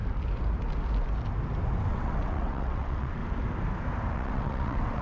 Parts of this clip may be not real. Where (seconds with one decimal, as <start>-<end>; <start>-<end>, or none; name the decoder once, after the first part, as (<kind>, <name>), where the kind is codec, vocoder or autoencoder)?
1.9-3.2 (vocoder, WaveNeXt); 4.1-5.0